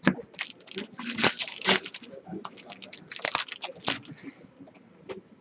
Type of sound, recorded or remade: recorded